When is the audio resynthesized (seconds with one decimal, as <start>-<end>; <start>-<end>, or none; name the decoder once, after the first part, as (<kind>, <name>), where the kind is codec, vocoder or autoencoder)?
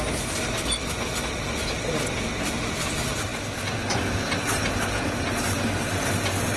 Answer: none